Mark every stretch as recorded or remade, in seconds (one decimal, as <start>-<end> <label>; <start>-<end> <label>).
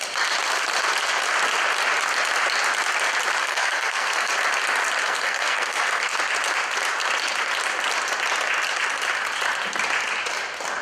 0.0-3.4 recorded; 3.4-4.3 remade; 4.3-5.0 recorded; 5.0-6.2 remade; 6.2-10.8 recorded